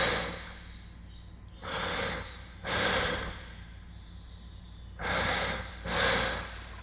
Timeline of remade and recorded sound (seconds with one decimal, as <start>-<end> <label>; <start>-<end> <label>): 0.0-1.6 recorded; 1.6-5.7 remade; 5.7-6.8 recorded